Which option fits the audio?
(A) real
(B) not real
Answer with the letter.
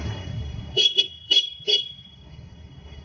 B